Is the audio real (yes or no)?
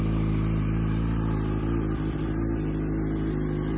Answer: yes